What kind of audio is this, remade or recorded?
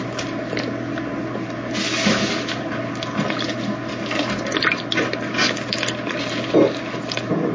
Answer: recorded